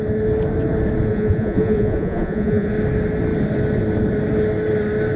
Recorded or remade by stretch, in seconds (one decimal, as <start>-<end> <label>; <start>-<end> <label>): 0.0-1.1 recorded; 1.1-2.7 remade; 2.7-5.2 recorded